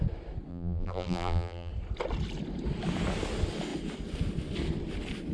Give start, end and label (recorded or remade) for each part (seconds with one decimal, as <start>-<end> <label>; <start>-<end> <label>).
0.0-0.5 recorded; 0.5-1.7 remade; 1.7-5.3 recorded